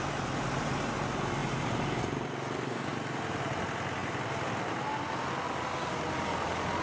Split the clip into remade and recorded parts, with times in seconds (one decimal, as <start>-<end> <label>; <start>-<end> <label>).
0.0-6.8 recorded